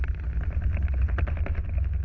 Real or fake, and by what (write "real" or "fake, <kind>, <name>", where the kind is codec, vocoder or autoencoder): real